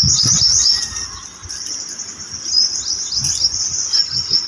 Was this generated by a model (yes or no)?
no